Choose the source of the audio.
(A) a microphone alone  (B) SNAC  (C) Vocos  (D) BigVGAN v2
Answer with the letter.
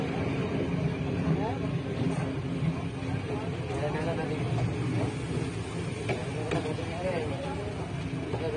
A